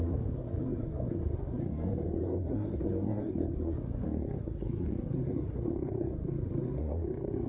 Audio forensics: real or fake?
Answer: fake